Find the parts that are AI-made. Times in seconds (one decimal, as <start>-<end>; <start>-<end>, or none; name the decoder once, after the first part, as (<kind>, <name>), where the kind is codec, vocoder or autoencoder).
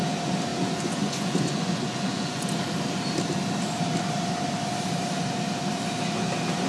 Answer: 0.5-2.5 (vocoder, Vocos)